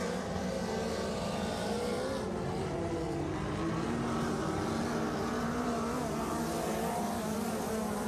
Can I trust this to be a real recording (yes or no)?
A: yes